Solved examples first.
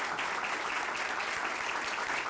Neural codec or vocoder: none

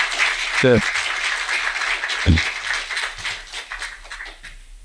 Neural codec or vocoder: none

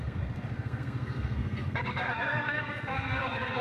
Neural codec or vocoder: codec, SNAC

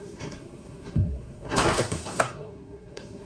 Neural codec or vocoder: codec, SNAC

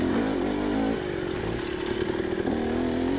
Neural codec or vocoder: none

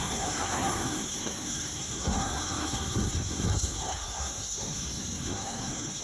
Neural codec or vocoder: codec, SNAC